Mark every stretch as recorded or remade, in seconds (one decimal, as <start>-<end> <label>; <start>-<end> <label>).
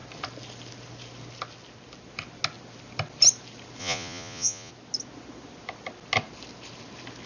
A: 0.0-3.8 recorded; 3.8-4.7 remade; 4.7-7.3 recorded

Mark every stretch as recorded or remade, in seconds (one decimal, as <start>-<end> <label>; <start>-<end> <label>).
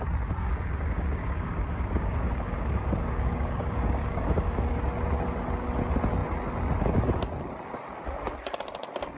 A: 0.0-0.4 recorded; 0.4-4.8 remade; 4.8-9.2 recorded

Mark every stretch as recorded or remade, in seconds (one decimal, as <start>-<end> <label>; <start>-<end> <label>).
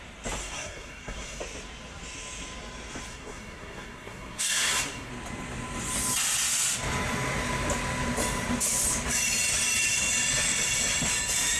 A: 0.0-0.4 recorded; 0.4-1.4 remade; 1.4-3.1 recorded; 3.1-5.1 remade; 5.1-11.6 recorded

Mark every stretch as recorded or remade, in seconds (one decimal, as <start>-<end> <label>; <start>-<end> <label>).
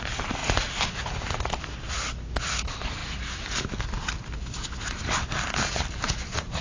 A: 0.0-6.6 recorded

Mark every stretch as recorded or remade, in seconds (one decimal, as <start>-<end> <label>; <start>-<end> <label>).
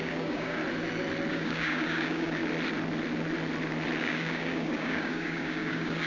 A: 0.0-0.6 remade; 0.6-1.3 recorded; 1.3-2.4 remade; 2.4-4.0 recorded; 4.0-6.1 remade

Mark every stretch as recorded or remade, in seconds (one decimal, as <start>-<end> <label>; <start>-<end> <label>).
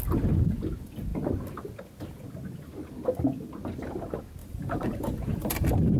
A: 0.0-4.4 recorded; 4.4-6.0 remade